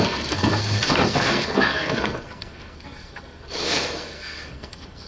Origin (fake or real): fake